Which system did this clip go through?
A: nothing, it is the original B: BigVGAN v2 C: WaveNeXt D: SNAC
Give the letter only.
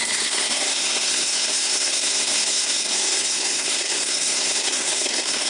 D